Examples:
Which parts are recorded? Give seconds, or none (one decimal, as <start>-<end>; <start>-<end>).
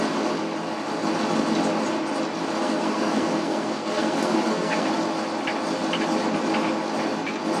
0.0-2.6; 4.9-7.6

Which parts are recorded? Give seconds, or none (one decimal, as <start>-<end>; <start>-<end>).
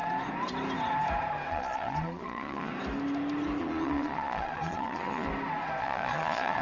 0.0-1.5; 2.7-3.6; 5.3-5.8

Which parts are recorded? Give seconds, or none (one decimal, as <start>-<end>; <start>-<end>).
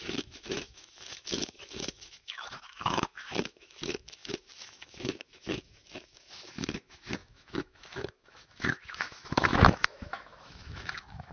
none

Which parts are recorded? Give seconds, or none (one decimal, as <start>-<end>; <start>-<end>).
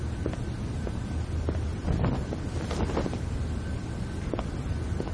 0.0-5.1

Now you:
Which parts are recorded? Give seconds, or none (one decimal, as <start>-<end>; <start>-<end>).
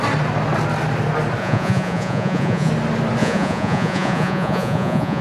0.0-1.4; 2.7-3.2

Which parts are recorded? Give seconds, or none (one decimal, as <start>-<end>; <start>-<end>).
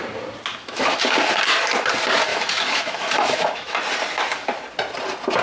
0.0-0.5; 1.0-2.3; 3.8-5.4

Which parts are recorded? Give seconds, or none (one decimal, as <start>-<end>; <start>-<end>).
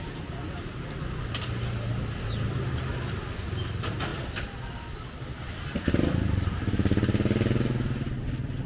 0.0-8.7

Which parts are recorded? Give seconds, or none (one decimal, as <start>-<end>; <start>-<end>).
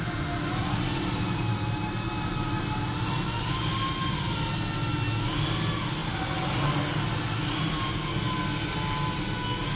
0.0-9.8